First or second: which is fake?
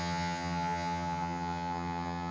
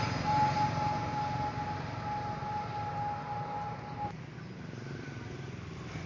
first